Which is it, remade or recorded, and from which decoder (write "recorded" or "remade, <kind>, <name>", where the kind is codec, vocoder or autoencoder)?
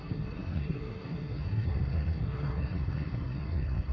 remade, codec, SNAC